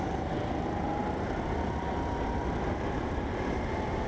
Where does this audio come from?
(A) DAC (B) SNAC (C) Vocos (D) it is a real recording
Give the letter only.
D